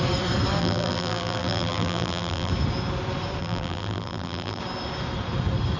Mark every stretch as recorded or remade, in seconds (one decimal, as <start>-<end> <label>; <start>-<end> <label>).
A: 0.0-0.6 recorded; 0.6-2.5 remade; 2.5-3.4 recorded; 3.4-4.6 remade; 4.6-5.8 recorded